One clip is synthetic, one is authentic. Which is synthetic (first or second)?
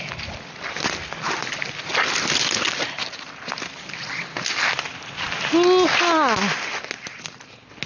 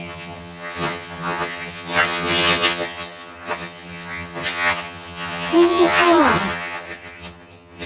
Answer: second